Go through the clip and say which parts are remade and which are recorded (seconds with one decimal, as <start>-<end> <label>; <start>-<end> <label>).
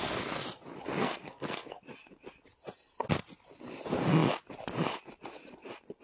0.0-1.0 recorded; 1.0-1.8 remade; 1.8-6.0 recorded